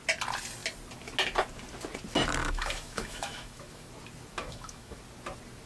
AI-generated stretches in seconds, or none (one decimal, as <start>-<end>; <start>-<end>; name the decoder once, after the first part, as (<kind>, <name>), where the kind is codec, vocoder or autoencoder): 2.4-3.9 (autoencoder, DAC-VAE); 4.4-5.0